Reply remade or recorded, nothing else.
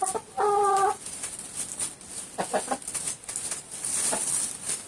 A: remade